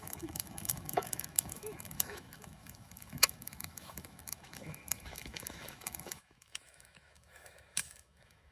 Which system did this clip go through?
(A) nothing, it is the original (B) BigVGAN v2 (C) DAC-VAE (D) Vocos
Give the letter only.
C